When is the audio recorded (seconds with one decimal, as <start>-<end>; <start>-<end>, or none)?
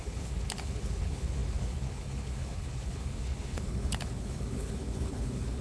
none